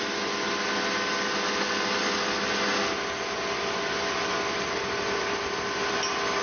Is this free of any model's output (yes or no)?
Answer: yes